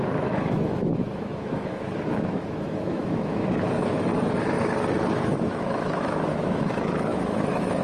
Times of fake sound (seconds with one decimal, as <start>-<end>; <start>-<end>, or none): 0.0-4.1; 5.1-7.8